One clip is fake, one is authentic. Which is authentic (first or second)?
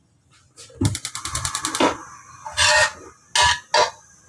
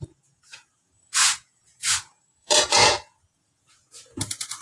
first